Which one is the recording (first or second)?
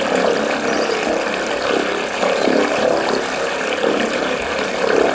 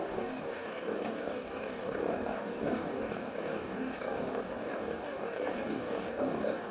first